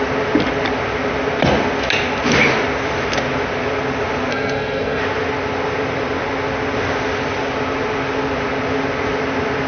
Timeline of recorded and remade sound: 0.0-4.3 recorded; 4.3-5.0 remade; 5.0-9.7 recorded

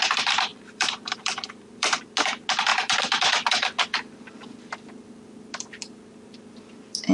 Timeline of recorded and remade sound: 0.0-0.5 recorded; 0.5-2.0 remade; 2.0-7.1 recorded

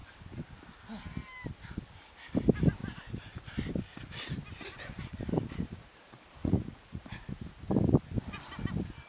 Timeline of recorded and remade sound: 0.0-6.4 recorded; 6.4-7.3 remade; 7.3-9.1 recorded